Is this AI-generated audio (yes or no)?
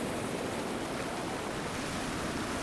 no